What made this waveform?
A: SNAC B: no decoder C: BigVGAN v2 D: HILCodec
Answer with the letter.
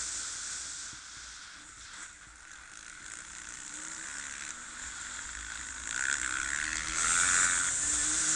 B